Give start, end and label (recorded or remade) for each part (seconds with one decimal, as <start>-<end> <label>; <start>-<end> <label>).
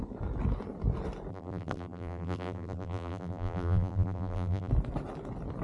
0.0-1.3 recorded; 1.3-4.7 remade; 4.7-5.6 recorded